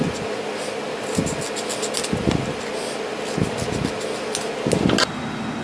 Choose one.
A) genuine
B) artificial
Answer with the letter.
A